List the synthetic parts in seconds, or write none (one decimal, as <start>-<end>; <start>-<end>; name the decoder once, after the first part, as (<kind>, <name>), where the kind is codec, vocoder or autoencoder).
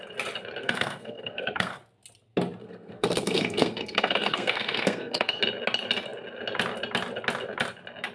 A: 0.6-1.8 (codec, SNAC); 2.6-5.4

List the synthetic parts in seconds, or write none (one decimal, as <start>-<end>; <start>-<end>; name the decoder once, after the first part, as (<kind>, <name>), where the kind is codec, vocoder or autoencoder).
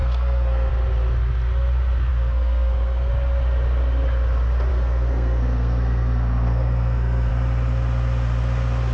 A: 0.0-0.7 (codec, SNAC); 2.1-3.1; 4.7-7.3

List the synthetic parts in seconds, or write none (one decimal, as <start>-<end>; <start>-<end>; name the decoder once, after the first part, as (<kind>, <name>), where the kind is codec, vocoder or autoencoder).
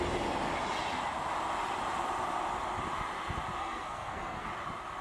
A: 3.6-4.5 (codec, SNAC)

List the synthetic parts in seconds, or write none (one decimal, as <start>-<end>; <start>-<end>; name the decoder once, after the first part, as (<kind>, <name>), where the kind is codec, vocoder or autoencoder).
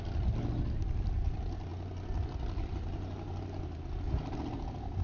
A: none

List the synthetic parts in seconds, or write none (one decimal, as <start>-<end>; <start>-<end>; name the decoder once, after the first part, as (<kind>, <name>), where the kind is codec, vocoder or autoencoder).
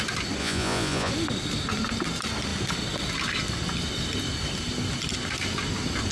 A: 0.4-1.1 (vocoder, Vocos)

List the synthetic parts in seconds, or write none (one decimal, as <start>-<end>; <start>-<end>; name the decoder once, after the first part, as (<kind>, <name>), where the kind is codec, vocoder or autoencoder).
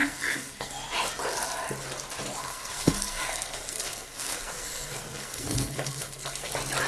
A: 0.0-0.7 (codec, SNAC); 2.4-6.5